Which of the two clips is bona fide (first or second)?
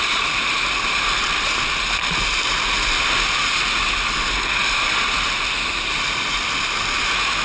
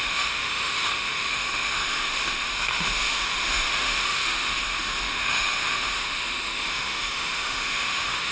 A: first